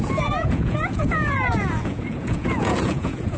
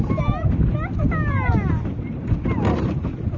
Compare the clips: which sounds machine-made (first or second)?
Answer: first